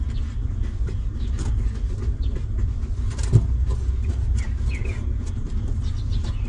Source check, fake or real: real